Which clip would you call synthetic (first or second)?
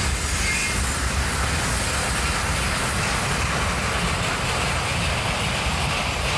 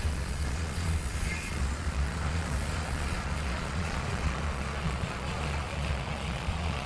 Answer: second